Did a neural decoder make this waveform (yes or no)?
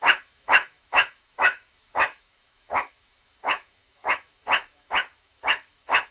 yes